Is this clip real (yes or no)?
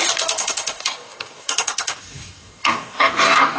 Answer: no